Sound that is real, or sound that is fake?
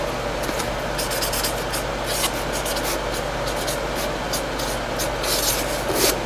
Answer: real